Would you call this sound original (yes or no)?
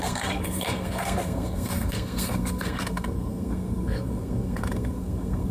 no